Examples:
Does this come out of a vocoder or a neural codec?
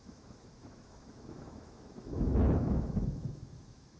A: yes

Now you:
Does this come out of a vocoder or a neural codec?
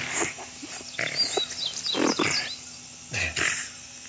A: no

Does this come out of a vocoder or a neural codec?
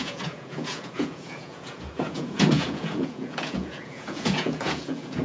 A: yes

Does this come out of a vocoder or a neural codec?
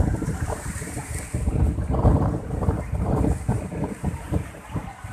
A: yes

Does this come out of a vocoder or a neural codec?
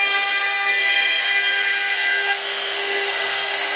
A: yes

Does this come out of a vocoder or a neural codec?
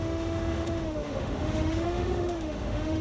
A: yes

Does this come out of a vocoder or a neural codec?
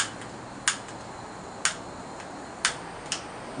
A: no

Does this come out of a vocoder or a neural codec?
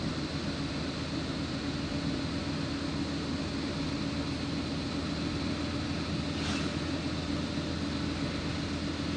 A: no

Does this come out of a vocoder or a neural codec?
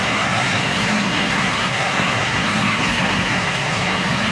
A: yes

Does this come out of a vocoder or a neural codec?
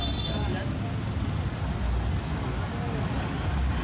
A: no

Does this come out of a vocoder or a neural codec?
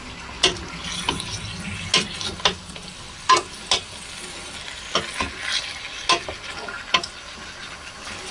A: no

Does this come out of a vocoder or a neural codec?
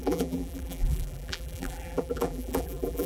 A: yes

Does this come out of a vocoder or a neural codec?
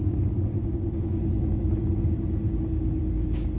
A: yes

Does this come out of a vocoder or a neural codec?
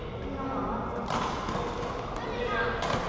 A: no